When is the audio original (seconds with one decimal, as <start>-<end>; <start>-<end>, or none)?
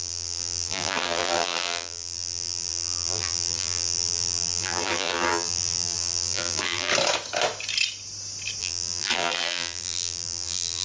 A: 6.9-8.6